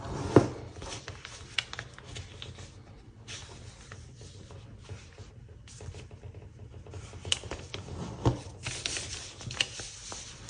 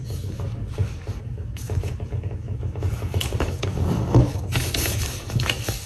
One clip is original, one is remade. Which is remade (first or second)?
second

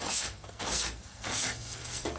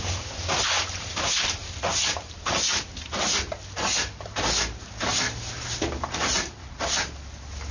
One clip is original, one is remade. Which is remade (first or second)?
first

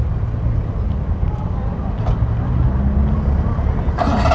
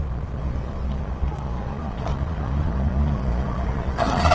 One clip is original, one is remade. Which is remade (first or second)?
second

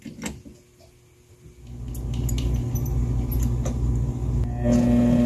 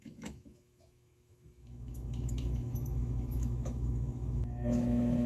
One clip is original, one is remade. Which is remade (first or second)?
second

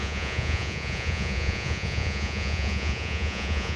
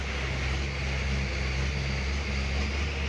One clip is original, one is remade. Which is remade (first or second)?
first